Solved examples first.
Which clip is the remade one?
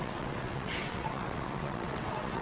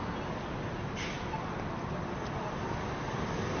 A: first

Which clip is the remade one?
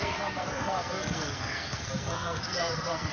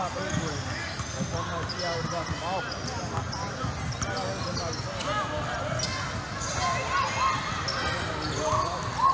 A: first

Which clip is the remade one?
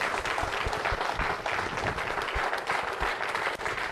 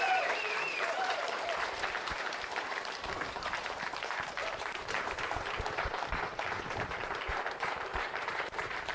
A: second